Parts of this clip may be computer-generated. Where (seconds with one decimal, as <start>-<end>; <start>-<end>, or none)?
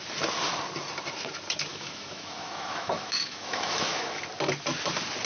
1.7-4.2